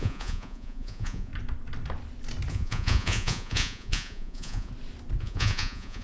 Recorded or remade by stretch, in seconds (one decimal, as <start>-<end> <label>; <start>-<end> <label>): 0.0-1.3 remade; 1.3-2.5 recorded; 2.5-4.7 remade; 4.7-5.2 recorded; 5.2-6.0 remade